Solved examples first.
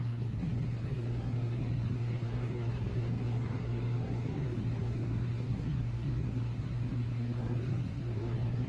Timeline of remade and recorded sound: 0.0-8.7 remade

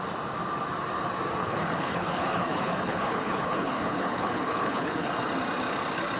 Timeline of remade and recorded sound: 0.0-1.4 recorded; 1.4-5.1 remade; 5.1-6.2 recorded

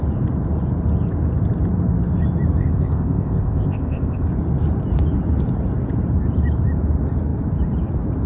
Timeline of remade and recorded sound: 0.0-2.6 recorded; 2.6-4.3 remade; 4.3-8.3 recorded

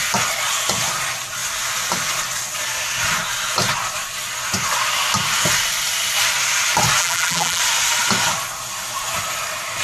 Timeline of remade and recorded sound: 0.0-7.0 recorded; 7.0-7.6 remade; 7.6-9.8 recorded

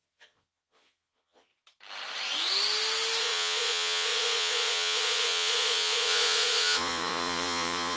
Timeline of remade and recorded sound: 0.0-1.5 remade; 1.5-3.2 recorded; 3.2-8.0 remade

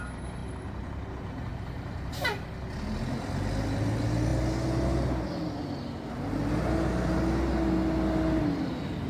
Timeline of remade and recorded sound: 0.0-0.4 recorded; 0.4-1.1 remade; 1.1-1.5 recorded; 1.5-2.1 remade; 2.1-9.1 recorded

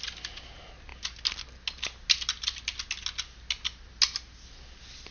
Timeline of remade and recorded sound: 0.0-5.1 recorded

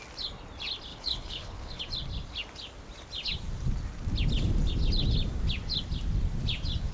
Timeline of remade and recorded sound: 0.0-0.9 recorded; 0.9-1.8 remade; 1.8-6.9 recorded